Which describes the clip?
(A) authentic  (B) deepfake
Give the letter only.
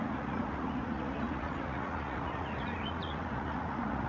B